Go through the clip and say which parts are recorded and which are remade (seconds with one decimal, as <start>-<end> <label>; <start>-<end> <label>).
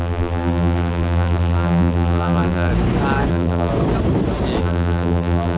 0.0-2.7 remade; 2.7-3.3 recorded; 3.3-3.7 remade; 3.7-4.6 recorded; 4.6-5.6 remade